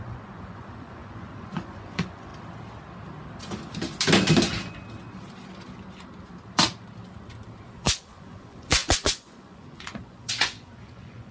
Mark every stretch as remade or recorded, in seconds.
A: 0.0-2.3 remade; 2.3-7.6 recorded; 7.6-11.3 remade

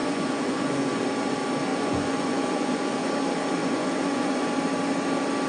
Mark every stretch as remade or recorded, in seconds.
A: 0.0-1.0 remade; 1.0-1.7 recorded; 1.7-3.1 remade; 3.1-3.6 recorded; 3.6-4.5 remade; 4.5-5.5 recorded

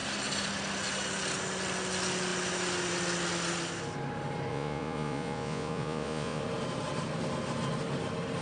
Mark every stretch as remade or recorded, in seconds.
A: 0.0-4.5 recorded; 4.5-6.4 remade; 6.4-8.4 recorded

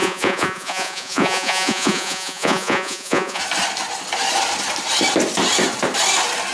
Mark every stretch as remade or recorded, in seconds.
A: 0.0-3.4 remade; 3.4-6.5 recorded

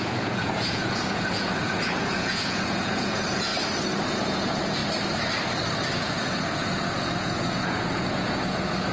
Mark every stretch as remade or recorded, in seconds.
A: 0.0-3.5 remade; 3.5-4.1 recorded; 4.1-4.8 remade; 4.8-5.9 recorded; 5.9-8.9 remade